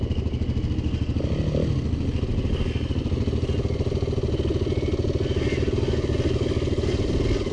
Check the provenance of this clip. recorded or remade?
recorded